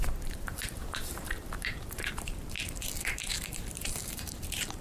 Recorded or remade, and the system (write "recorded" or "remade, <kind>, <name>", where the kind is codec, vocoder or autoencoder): remade, vocoder, BigVGAN v2